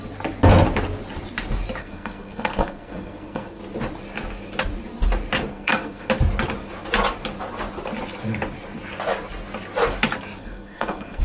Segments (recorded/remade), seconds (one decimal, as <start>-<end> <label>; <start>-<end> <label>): 0.0-1.8 recorded; 1.8-3.6 remade; 3.6-5.5 recorded; 5.5-6.1 remade; 6.1-10.4 recorded; 10.4-11.2 remade